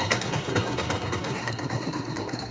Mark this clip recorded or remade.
remade